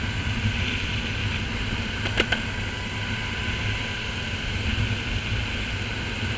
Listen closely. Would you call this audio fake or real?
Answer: real